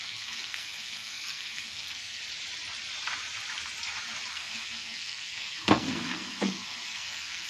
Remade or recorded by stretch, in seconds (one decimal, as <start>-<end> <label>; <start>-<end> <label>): 0.0-2.2 remade; 2.2-4.3 recorded; 4.3-7.5 remade

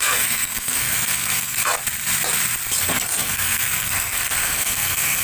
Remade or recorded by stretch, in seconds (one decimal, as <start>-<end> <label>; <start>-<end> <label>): 0.0-1.6 remade; 1.6-2.8 recorded; 2.8-5.2 remade